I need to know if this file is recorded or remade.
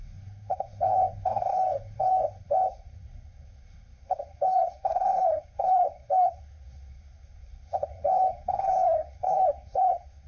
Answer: remade